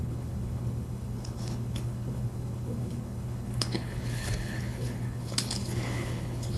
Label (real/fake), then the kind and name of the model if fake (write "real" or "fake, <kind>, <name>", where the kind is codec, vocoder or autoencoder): fake, codec, HILCodec